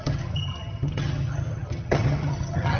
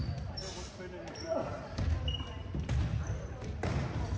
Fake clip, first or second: first